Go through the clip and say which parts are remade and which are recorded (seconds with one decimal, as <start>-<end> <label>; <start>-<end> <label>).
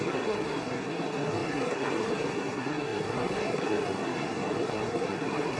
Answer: 0.0-5.6 remade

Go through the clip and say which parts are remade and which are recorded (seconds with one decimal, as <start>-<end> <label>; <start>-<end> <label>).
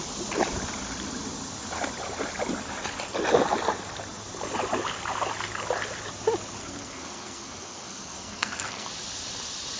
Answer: 0.0-6.6 recorded; 6.6-8.9 remade; 8.9-9.8 recorded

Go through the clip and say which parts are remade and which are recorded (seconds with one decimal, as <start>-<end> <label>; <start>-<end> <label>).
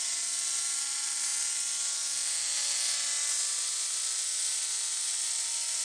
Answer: 0.0-5.8 recorded